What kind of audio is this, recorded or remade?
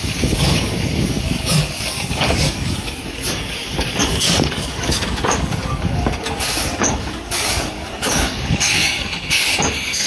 remade